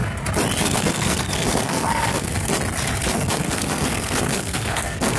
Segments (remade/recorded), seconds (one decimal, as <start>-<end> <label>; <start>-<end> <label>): 0.0-0.6 recorded; 0.6-2.5 remade; 2.5-3.1 recorded; 3.1-5.2 remade